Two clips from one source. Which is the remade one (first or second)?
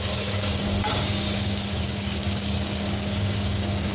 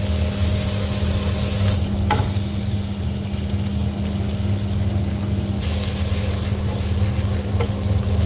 first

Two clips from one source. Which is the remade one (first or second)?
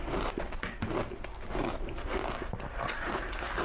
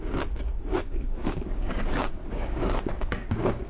second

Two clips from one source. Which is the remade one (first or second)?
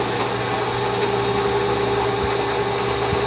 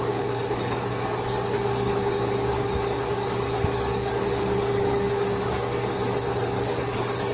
second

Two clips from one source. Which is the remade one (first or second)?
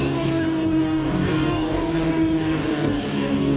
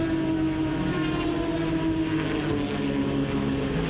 first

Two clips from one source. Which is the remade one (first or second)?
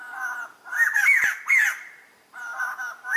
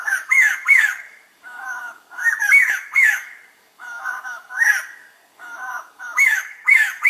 second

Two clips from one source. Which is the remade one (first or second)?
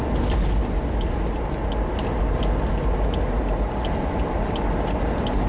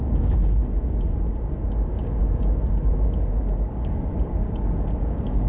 second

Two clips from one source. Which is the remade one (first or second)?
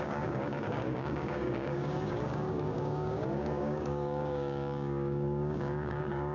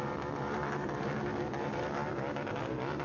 first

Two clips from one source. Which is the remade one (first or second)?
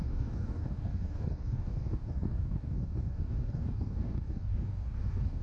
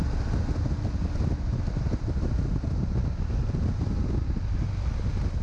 first